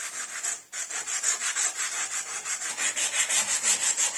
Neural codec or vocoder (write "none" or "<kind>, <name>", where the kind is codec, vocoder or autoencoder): vocoder, BigVGAN v2